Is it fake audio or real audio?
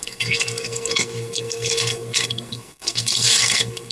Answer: fake